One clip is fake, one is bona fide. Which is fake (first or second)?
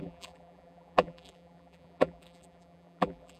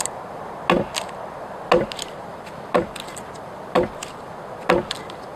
first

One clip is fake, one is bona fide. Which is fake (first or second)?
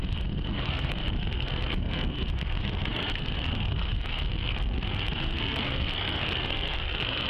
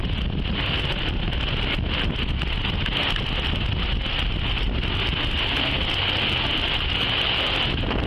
first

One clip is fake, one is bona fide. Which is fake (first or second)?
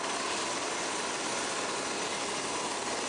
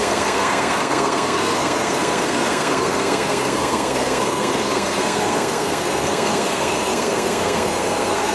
second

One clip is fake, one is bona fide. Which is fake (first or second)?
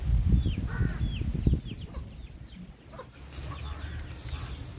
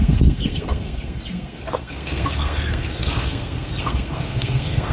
second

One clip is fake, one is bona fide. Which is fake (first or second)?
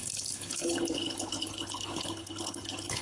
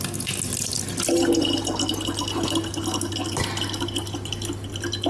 first